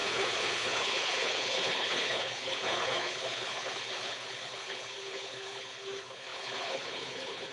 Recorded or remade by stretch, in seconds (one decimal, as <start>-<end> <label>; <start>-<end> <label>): 0.0-7.5 remade